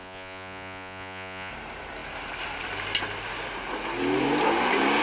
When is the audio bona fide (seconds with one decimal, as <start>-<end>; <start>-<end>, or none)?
1.5-5.0